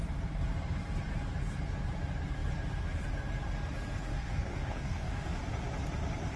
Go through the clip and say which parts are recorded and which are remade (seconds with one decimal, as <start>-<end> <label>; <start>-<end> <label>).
0.0-4.1 recorded; 4.1-5.4 remade; 5.4-6.4 recorded